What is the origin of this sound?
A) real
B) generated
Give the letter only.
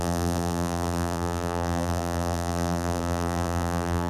B